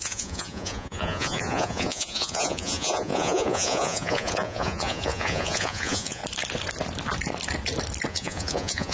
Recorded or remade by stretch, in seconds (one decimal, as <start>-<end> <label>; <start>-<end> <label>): 0.0-6.2 remade; 6.2-8.1 recorded; 8.1-8.9 remade